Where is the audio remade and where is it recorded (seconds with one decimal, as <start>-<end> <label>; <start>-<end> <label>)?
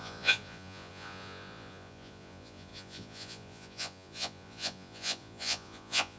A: 0.0-6.2 remade